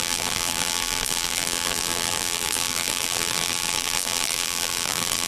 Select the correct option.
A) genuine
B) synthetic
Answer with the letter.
B